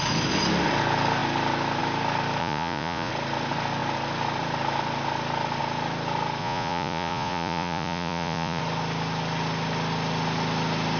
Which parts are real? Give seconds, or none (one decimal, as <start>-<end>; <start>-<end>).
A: 0.0-2.4; 3.1-6.4; 8.6-11.0